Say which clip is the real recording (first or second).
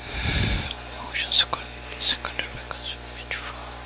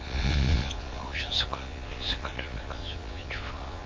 first